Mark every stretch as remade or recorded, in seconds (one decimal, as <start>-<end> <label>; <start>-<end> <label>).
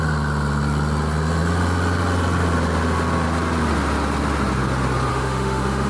0.0-5.1 recorded; 5.1-5.9 remade